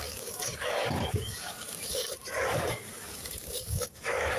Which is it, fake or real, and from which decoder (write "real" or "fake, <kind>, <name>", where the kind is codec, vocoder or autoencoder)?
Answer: fake, codec, DAC